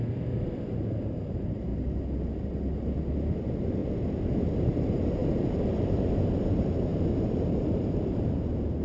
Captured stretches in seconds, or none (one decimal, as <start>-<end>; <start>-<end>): 1.7-3.1; 3.8-4.4